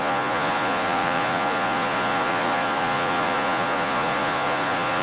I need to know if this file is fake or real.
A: fake